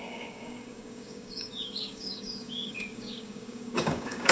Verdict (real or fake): fake